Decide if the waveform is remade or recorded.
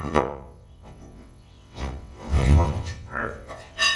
remade